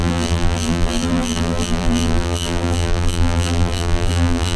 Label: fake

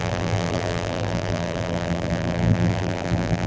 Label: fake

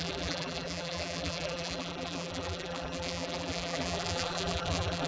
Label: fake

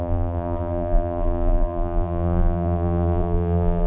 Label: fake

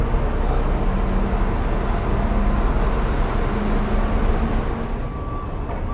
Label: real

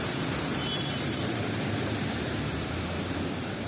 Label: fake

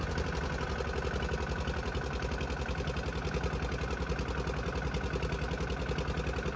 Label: real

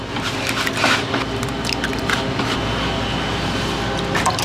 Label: fake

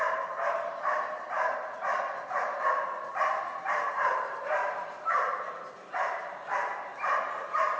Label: fake